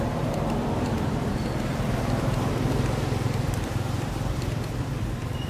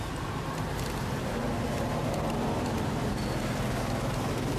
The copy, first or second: first